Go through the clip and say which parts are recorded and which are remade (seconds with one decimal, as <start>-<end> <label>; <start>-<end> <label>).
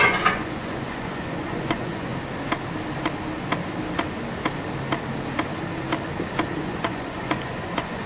0.0-2.1 remade; 2.1-6.6 recorded; 6.6-8.1 remade